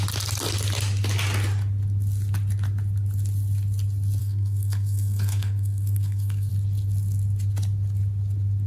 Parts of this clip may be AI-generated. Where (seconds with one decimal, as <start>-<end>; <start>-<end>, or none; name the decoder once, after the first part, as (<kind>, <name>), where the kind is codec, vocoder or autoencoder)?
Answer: 4.2-6.5 (codec, SNAC)